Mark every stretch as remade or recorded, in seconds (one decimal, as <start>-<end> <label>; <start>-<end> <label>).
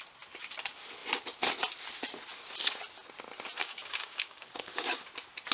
0.0-3.6 recorded; 3.6-5.0 remade; 5.0-5.5 recorded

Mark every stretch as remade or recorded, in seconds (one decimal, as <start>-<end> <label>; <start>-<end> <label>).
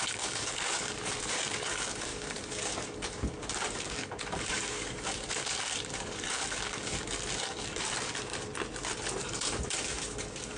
0.0-8.3 remade; 8.3-9.3 recorded; 9.3-10.6 remade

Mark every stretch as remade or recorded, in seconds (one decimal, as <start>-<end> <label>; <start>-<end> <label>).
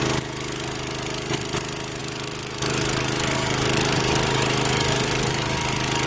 0.0-2.0 recorded; 2.0-6.1 remade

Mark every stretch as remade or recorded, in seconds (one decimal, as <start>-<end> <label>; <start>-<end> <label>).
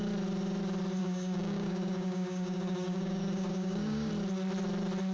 0.0-1.0 recorded; 1.0-4.1 remade; 4.1-5.1 recorded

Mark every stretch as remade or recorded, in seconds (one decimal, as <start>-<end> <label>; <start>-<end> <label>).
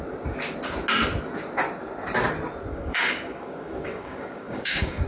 0.0-2.7 recorded; 2.7-5.1 remade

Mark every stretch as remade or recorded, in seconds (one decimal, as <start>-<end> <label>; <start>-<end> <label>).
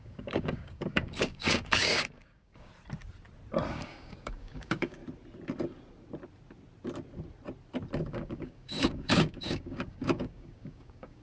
0.0-2.7 remade; 2.7-3.7 recorded; 3.7-5.0 remade; 5.0-8.0 recorded; 8.0-11.2 remade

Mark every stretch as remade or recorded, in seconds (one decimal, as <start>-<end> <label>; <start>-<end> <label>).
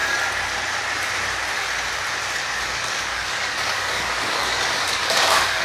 0.0-2.4 recorded; 2.4-5.6 remade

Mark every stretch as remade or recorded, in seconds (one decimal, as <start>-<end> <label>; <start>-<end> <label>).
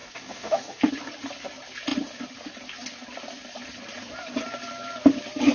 0.0-0.8 remade; 0.8-5.5 recorded